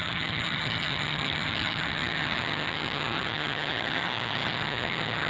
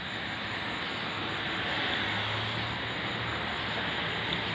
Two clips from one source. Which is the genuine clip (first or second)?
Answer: second